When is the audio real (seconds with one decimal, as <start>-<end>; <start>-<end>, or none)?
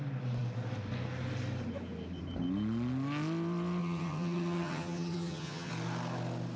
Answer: 0.0-3.8; 5.7-6.6